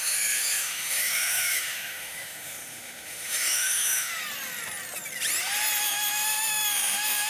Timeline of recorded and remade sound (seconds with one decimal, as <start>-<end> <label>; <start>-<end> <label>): 0.0-4.1 remade; 4.1-5.8 recorded; 5.8-7.3 remade